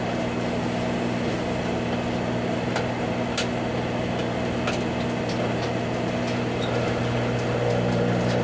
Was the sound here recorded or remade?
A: recorded